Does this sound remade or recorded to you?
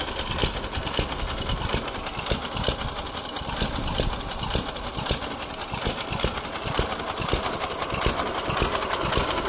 recorded